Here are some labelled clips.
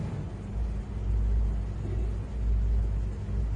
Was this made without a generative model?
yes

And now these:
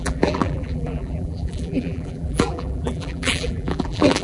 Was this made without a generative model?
no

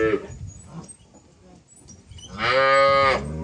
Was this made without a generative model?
yes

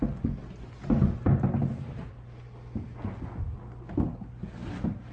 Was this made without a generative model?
yes